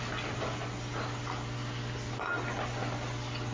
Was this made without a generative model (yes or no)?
yes